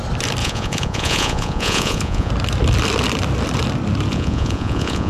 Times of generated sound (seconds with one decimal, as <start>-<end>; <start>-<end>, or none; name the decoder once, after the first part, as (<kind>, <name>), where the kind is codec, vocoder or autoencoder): 0.4-2.3 (vocoder, Vocos); 4.1-5.1